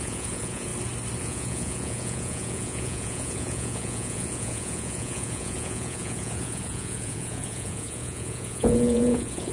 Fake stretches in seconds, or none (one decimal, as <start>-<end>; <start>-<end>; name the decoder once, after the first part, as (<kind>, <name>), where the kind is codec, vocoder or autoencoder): 0.0-0.7 (vocoder, Vocos); 1.2-9.5